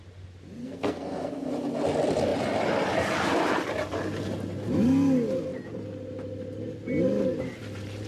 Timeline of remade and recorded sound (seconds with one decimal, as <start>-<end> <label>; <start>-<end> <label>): 0.0-0.6 recorded; 0.6-1.5 remade; 1.5-8.1 recorded